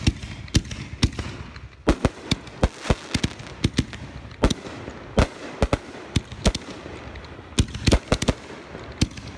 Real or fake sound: real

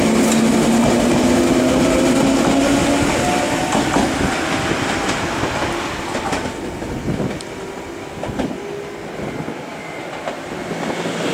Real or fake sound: real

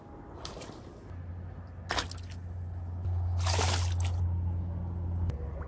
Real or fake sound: real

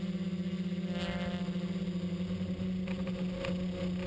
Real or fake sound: real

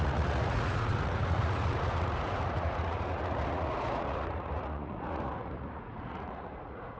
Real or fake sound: fake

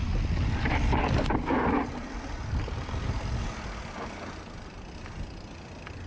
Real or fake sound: real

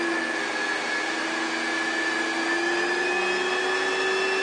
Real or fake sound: real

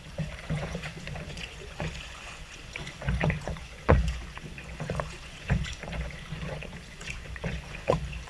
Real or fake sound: fake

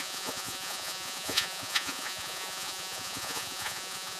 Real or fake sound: fake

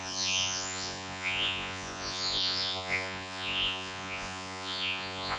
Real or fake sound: fake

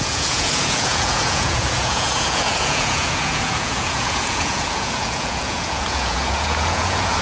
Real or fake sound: fake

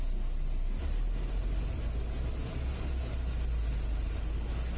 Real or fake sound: real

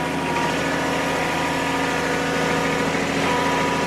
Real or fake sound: real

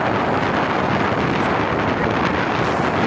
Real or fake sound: real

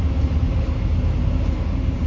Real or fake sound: real